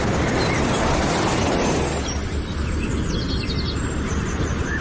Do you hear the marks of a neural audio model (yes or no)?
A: no